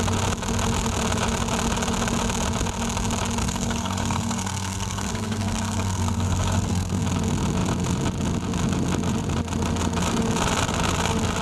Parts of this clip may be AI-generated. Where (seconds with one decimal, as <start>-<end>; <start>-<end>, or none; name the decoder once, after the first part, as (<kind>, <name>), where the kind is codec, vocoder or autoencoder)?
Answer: 3.4-7.0 (codec, SNAC)